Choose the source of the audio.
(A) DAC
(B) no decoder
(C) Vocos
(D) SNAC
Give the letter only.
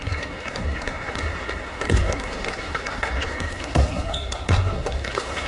D